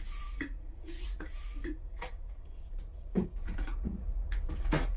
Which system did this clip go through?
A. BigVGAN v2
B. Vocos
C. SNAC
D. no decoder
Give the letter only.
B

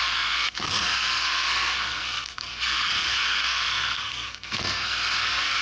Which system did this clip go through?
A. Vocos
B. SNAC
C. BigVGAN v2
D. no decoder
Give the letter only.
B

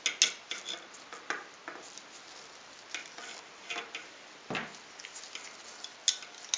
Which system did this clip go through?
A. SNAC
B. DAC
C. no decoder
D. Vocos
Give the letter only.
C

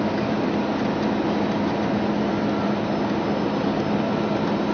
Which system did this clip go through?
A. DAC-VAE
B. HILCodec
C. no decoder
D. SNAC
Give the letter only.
C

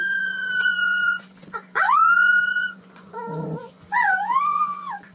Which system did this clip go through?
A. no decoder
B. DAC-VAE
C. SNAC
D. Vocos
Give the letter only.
D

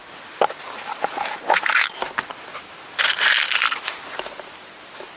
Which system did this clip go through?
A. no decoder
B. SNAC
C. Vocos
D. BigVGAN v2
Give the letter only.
A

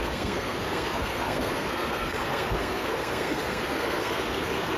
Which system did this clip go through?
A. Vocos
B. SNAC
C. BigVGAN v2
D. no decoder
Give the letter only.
B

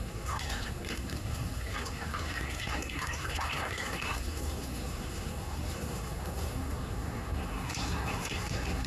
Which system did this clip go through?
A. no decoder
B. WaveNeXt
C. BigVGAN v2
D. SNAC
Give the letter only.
D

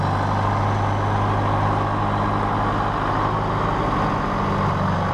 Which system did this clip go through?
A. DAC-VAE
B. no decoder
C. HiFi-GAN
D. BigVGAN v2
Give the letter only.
B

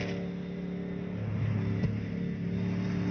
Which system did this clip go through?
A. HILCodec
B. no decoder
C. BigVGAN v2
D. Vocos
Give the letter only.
B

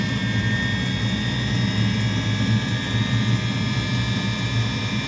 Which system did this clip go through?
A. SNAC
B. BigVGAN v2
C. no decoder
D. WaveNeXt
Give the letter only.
C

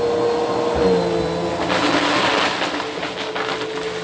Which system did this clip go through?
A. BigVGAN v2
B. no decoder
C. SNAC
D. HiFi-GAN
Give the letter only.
B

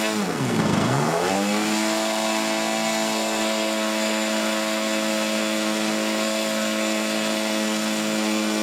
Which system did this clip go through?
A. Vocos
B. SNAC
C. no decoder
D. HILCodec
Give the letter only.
B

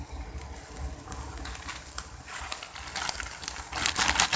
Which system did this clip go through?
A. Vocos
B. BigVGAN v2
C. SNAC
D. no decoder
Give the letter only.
D